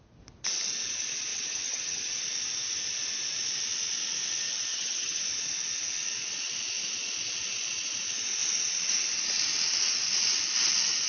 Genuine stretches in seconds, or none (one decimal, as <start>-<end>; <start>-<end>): 0.0-1.3; 2.1-4.7; 5.2-11.1